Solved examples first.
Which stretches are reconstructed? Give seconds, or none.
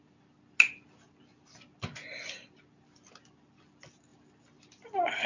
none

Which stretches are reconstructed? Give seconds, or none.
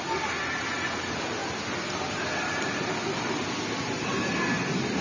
none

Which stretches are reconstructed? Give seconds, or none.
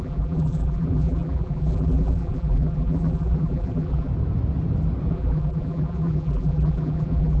0.0-4.1 (vocoder, BigVGAN v2); 5.1-7.4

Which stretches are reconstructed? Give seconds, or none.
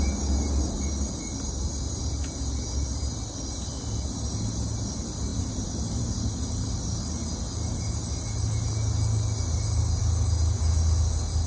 5.3-6.1 (vocoder, BigVGAN v2)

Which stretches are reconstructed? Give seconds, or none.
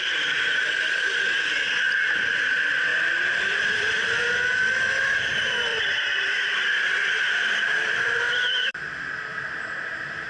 2.9-4.2 (vocoder, BigVGAN v2); 5.7-8.8; 9.3-10.3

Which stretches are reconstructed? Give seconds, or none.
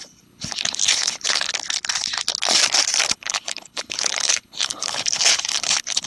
0.0-1.5 (codec, HILCodec); 3.1-6.1